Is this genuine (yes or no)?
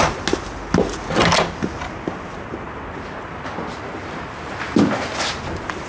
yes